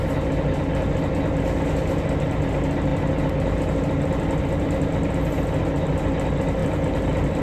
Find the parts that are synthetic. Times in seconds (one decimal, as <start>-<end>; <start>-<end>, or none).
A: 6.6-7.4